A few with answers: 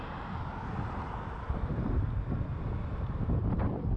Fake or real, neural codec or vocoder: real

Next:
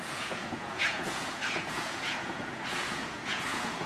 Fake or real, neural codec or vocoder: fake, vocoder, Vocos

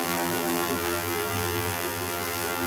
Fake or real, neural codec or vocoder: fake, vocoder, BigVGAN v2